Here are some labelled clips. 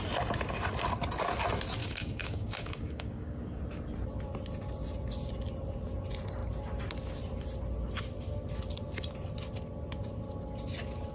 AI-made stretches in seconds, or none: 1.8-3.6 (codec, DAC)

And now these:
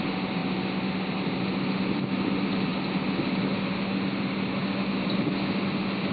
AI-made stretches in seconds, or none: none